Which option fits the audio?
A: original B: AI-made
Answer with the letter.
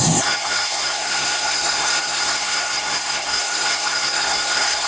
B